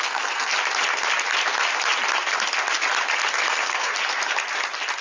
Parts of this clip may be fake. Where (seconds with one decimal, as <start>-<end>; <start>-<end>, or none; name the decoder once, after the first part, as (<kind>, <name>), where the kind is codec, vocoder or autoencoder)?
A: 0.0-0.5 (codec, SNAC); 3.5-3.9